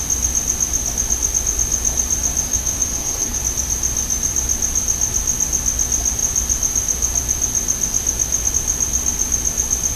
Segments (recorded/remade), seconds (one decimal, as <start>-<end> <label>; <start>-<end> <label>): 0.0-2.5 recorded; 2.5-3.4 remade; 3.4-10.0 recorded